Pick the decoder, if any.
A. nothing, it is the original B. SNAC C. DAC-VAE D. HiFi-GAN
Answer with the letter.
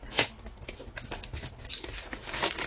A